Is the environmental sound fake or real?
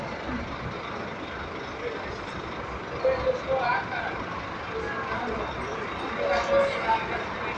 real